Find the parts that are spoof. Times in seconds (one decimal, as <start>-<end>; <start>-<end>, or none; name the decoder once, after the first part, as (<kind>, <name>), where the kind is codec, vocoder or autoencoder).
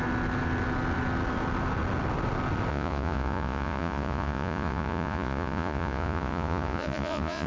2.7-7.5 (vocoder, Vocos)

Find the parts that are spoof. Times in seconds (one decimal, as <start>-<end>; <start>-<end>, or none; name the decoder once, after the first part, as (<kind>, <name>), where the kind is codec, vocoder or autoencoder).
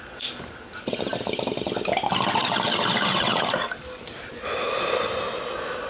none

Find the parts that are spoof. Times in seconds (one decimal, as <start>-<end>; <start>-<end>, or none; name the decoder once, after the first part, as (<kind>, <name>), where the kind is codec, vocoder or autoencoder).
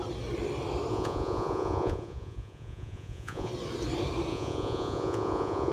0.9-3.5 (vocoder, Vocos); 4.3-5.7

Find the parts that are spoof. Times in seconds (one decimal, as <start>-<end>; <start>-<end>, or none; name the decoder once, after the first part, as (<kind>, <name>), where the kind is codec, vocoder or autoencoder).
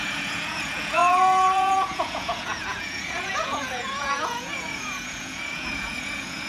0.0-6.5 (vocoder, Vocos)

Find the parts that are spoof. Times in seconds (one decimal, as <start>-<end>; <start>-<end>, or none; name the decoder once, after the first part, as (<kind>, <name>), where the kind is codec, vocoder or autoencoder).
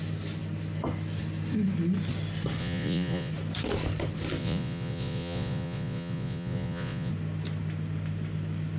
2.6-3.3 (vocoder, Vocos); 4.4-7.1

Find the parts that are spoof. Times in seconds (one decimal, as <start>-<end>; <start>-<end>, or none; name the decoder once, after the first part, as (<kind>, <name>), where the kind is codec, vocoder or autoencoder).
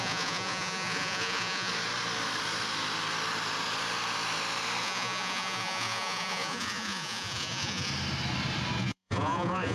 0.0-1.7 (vocoder, Vocos); 4.8-7.9; 8.8-9.7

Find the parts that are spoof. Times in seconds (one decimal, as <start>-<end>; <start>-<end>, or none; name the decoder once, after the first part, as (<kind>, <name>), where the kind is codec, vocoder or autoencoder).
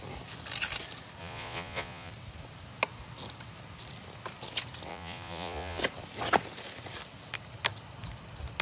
1.2-2.1 (vocoder, Vocos); 4.9-5.8